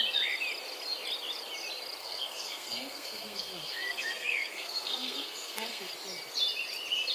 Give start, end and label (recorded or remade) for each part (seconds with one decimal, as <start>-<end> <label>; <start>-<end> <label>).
0.0-2.0 recorded; 2.0-5.9 remade; 5.9-7.1 recorded